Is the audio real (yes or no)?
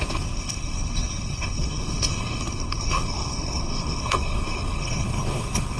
no